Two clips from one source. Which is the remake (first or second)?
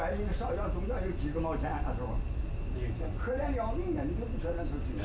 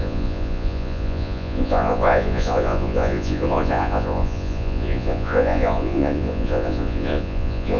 second